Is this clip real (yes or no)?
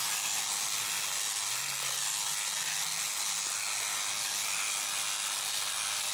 yes